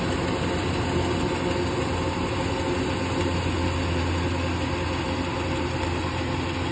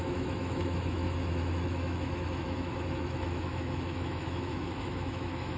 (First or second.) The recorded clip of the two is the first